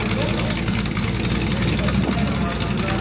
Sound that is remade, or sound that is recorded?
recorded